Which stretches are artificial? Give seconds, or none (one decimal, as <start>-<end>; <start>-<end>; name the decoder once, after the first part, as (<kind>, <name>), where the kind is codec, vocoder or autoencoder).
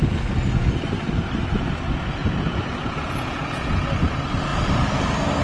2.2-3.6 (vocoder, Vocos)